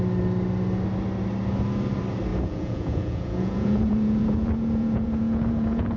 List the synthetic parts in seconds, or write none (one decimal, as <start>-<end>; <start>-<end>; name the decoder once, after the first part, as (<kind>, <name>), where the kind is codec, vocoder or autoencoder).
2.3-6.0 (vocoder, Vocos)